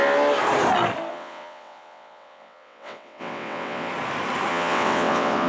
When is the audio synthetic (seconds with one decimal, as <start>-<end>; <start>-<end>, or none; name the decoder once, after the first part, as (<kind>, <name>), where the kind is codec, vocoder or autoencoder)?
1.1-3.9 (vocoder, WaveNeXt); 4.5-5.5